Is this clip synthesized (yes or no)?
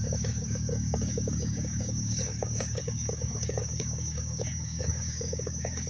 yes